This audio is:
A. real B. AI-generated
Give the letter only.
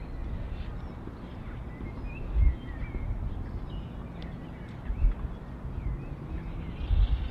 A